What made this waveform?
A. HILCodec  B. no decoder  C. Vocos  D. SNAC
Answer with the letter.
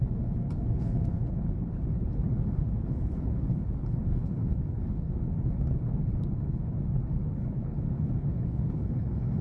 A